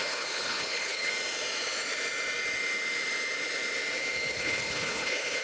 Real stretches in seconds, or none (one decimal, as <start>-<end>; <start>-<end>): 1.1-4.3